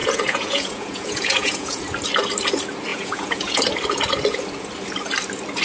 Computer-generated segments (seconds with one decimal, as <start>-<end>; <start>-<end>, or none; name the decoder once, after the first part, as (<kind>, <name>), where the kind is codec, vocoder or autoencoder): 0.0-1.8 (vocoder, Vocos); 2.9-3.6